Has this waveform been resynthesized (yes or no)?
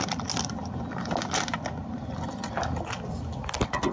no